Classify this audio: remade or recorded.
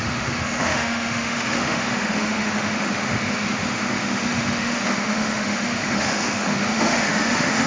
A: remade